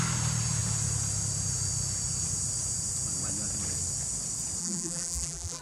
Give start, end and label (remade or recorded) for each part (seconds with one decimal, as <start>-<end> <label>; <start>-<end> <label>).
0.0-4.6 recorded; 4.6-5.6 remade

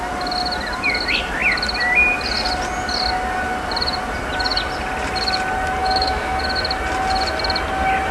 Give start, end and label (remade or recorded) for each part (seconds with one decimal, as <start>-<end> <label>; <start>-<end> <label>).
0.0-5.8 recorded; 5.8-6.4 remade; 6.4-8.1 recorded

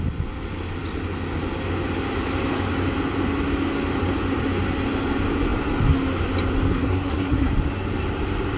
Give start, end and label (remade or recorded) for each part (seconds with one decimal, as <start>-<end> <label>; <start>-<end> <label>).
0.0-6.7 recorded; 6.7-7.5 remade; 7.5-8.6 recorded